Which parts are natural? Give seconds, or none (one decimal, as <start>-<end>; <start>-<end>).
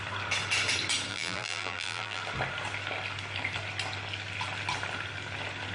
0.0-1.1; 2.2-5.7